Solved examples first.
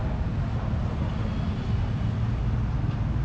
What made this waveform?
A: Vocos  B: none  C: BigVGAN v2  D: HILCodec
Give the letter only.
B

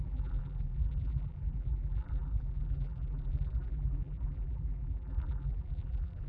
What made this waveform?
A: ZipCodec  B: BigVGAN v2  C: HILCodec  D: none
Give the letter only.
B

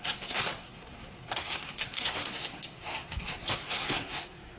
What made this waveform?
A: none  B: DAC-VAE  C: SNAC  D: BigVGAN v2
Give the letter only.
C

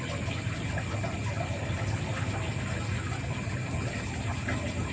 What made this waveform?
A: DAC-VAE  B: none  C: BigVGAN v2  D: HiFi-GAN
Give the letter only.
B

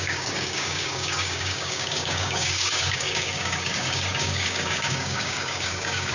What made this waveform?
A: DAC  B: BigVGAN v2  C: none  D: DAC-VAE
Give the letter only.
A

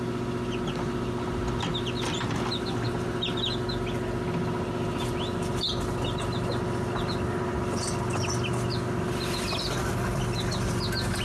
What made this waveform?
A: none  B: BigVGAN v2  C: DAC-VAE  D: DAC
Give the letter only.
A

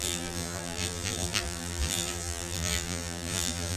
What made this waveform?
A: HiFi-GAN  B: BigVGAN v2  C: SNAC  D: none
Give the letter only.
B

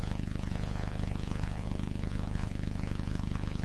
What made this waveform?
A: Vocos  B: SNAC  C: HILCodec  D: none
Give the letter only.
A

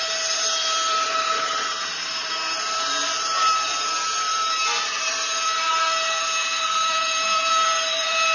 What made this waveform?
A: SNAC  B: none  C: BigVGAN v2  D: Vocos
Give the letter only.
C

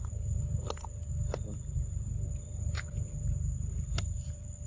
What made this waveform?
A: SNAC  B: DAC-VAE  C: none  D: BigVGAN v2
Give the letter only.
C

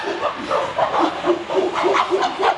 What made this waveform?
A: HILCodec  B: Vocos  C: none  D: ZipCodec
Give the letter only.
C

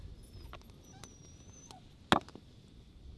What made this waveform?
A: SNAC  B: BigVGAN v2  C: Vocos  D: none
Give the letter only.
D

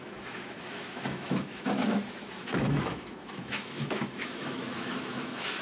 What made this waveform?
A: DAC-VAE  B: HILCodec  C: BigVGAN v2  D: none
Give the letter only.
A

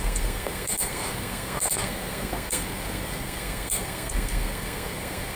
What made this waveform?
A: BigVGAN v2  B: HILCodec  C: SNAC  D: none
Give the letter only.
C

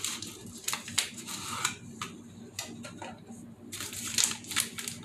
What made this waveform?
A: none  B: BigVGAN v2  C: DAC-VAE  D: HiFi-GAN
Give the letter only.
A